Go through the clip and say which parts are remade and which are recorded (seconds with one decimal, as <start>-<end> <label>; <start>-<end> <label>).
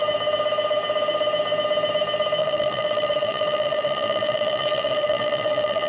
0.0-2.4 recorded; 2.4-5.9 remade